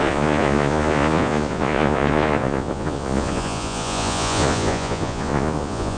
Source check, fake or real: fake